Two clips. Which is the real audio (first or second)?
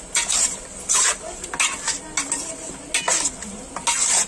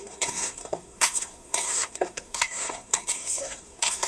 first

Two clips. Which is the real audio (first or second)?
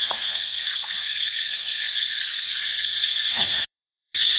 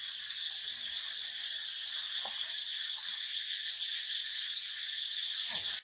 second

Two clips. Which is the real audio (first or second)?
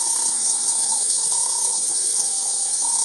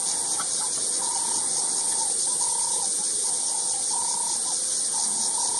second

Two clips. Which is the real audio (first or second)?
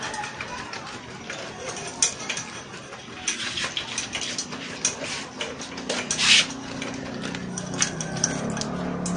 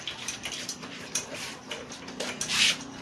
first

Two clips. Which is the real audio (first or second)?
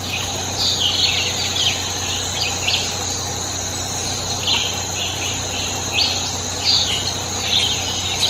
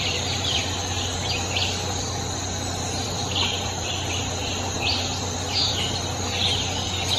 first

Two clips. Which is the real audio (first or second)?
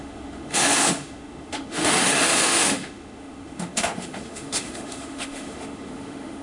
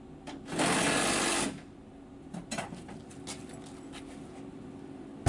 second